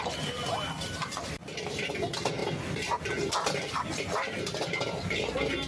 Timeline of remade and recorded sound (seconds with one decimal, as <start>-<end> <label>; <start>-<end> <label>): 0.0-5.7 recorded

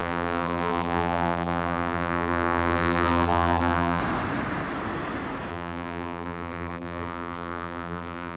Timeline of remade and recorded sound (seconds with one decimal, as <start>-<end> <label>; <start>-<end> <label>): 0.0-4.0 remade; 4.0-5.5 recorded; 5.5-8.4 remade

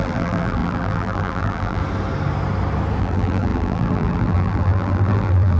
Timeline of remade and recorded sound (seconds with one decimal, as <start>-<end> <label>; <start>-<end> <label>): 0.0-1.8 remade; 1.8-3.0 recorded; 3.0-5.6 remade

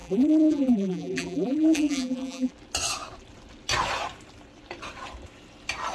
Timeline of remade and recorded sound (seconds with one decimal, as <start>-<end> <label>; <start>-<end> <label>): 0.0-2.5 remade; 2.5-5.9 recorded

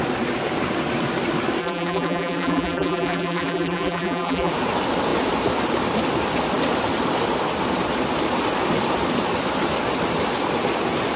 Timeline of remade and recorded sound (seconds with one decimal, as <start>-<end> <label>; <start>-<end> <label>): 0.0-1.6 recorded; 1.6-4.5 remade; 4.5-11.2 recorded

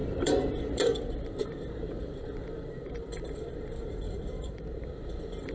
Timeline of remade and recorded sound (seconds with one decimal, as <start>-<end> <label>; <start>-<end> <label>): 0.0-5.5 remade

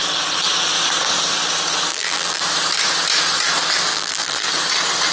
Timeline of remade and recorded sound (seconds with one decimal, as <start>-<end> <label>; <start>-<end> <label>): 0.0-1.9 recorded; 1.9-2.4 remade; 2.4-3.9 recorded; 3.9-4.5 remade; 4.5-5.1 recorded